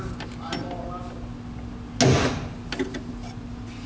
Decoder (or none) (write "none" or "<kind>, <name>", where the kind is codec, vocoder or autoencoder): none